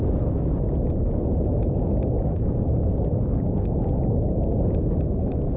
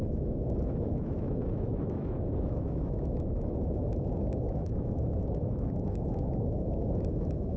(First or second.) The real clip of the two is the first